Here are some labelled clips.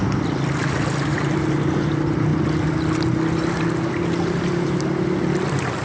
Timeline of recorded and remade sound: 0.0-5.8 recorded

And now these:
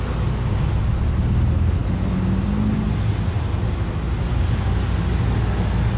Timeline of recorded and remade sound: 0.0-6.0 recorded

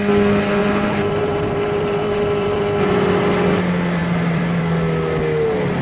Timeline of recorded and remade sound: 0.0-0.6 recorded; 0.6-2.6 remade; 2.6-4.0 recorded; 4.0-4.6 remade; 4.6-5.8 recorded

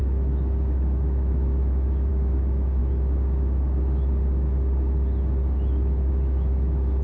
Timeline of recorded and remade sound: 0.0-2.8 remade; 2.8-6.1 recorded; 6.1-7.0 remade